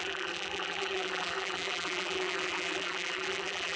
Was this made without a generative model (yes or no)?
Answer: no